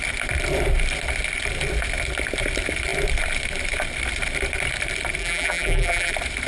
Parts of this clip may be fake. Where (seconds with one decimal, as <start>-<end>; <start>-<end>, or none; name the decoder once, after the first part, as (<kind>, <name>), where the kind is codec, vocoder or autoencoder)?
5.2-6.1 (vocoder, BigVGAN v2)